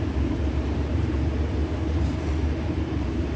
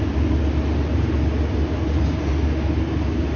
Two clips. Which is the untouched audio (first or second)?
second